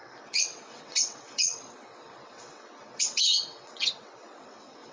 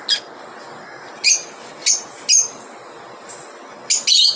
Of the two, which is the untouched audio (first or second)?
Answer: second